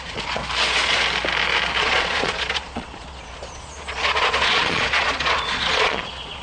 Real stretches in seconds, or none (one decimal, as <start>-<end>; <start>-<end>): 0.4-1.8